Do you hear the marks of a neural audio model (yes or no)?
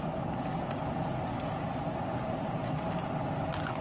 no